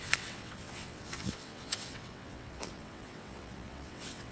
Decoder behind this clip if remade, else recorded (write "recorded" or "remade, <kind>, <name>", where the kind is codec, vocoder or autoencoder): remade, vocoder, WaveNeXt